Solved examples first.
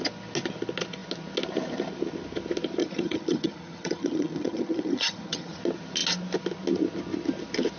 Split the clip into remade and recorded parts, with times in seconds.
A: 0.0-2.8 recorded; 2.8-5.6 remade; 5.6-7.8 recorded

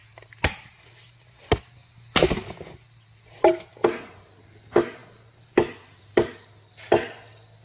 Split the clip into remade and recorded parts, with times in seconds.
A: 0.0-7.6 recorded